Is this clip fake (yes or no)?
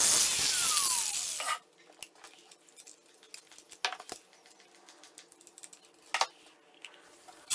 no